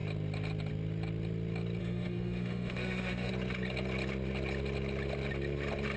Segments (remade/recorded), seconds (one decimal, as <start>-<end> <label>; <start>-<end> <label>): 0.0-1.8 recorded; 1.8-3.3 remade; 3.3-6.0 recorded